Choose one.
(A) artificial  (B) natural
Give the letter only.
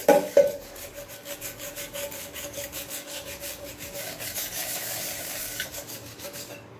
A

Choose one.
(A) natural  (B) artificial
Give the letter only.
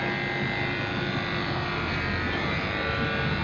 A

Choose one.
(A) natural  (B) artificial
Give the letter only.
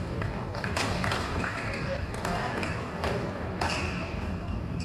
B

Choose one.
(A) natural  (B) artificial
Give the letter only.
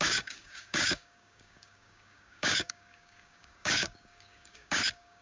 B